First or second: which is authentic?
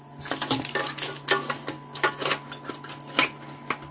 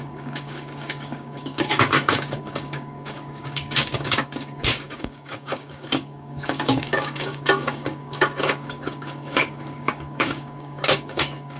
first